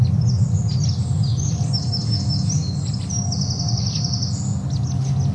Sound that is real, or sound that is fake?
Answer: real